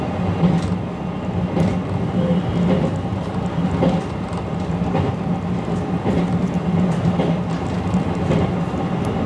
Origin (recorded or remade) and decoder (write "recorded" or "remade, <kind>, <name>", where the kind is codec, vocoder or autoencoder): recorded